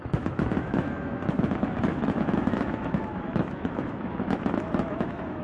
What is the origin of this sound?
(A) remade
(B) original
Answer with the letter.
A